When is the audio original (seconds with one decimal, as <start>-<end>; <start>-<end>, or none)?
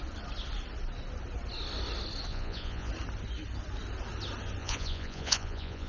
0.0-2.3; 2.9-4.6